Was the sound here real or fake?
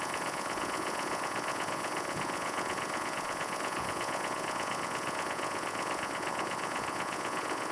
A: fake